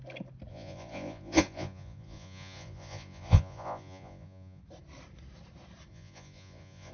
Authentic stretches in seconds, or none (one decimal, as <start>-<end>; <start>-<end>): 0.0-0.5; 4.6-5.9

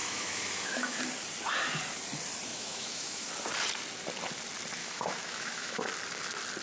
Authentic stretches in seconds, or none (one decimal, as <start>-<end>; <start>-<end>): 1.0-2.5; 3.3-4.8; 5.9-6.6

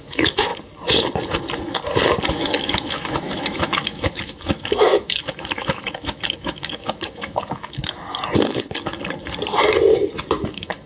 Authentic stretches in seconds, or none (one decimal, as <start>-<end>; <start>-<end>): 0.5-2.3; 7.8-10.3

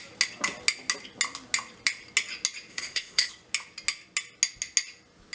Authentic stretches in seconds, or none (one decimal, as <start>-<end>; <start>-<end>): 0.0-2.7; 3.3-5.3

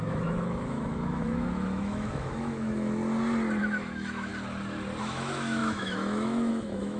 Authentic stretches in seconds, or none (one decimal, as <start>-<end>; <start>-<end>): 3.0-3.6; 4.3-5.0